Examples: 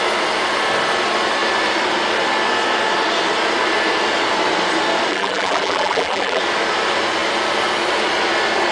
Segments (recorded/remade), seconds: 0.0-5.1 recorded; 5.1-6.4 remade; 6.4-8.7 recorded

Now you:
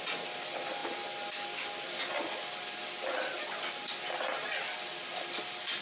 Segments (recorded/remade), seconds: 0.0-5.8 recorded

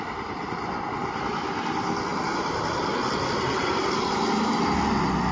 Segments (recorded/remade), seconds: 0.0-1.0 recorded; 1.0-1.6 remade; 1.6-5.3 recorded